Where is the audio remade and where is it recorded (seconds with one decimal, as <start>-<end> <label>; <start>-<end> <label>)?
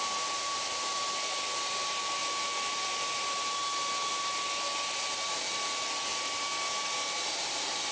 0.0-7.9 recorded